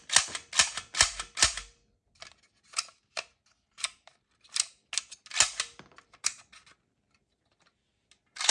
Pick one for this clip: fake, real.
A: real